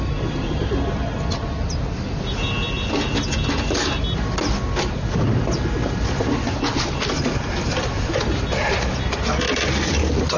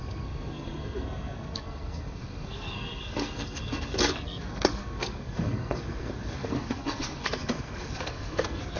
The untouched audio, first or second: first